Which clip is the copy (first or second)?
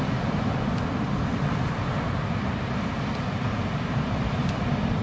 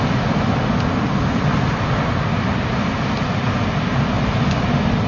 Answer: first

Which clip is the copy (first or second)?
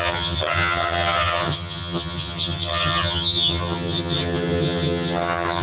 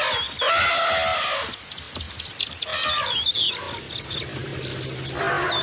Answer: first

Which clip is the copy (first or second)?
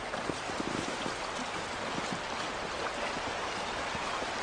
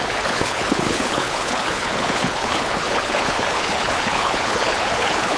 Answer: second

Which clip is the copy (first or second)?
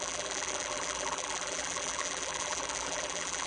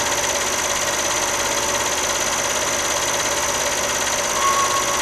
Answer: first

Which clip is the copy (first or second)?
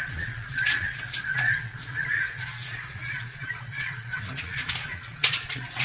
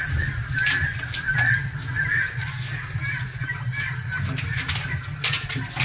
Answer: first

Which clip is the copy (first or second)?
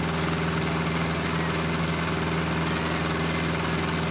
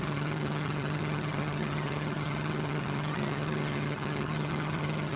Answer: second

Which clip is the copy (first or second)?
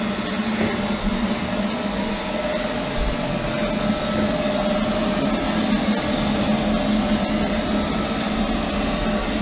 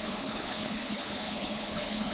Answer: second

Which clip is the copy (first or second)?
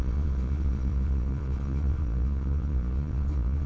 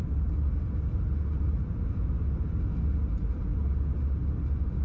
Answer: first